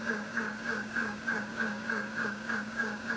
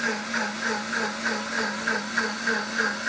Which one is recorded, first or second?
second